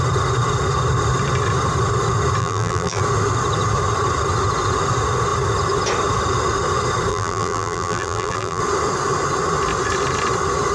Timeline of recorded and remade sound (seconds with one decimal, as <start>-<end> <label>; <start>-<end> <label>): 0.0-2.4 recorded; 2.4-3.0 remade; 3.0-7.1 recorded; 7.1-8.6 remade; 8.6-10.7 recorded

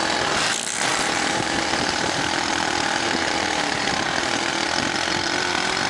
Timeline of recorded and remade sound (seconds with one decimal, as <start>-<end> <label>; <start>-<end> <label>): 0.0-0.9 recorded; 0.9-4.4 remade; 4.4-5.9 recorded